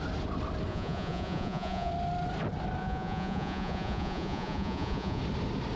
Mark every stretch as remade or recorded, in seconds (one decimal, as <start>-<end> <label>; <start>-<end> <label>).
0.0-0.7 recorded; 0.7-1.9 remade; 1.9-2.8 recorded; 2.8-5.2 remade; 5.2-5.8 recorded